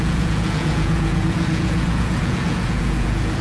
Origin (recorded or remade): remade